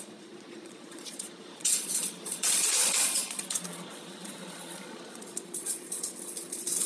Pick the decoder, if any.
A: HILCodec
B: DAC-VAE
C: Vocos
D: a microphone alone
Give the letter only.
C